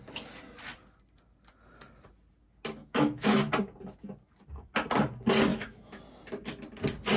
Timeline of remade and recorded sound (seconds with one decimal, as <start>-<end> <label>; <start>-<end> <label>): 0.0-2.8 recorded; 2.8-3.5 remade; 3.5-5.5 recorded; 5.5-6.0 remade; 6.0-7.2 recorded